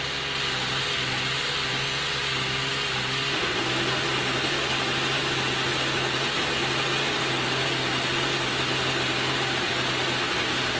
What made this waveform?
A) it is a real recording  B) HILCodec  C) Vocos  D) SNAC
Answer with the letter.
A